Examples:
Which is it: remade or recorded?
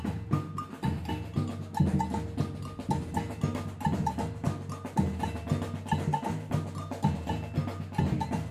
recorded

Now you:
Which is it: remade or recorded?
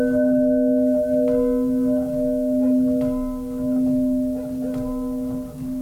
recorded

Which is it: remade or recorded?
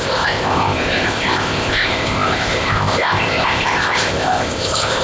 remade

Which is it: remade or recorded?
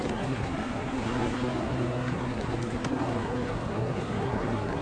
remade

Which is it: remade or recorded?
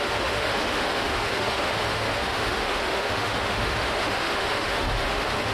remade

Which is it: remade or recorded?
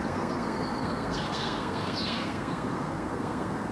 remade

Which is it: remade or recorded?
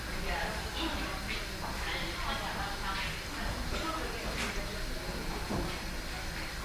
recorded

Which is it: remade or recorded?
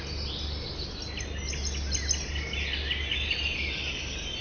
recorded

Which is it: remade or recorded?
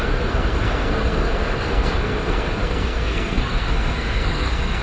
remade